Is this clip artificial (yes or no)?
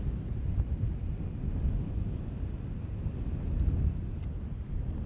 no